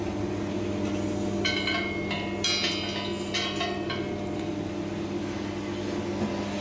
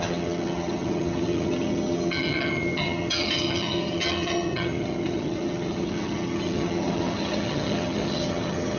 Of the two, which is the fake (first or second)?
second